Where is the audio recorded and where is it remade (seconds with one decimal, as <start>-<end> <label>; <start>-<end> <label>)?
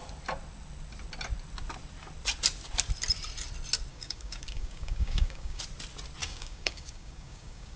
0.0-3.9 recorded; 3.9-5.6 remade; 5.6-6.2 recorded; 6.2-7.8 remade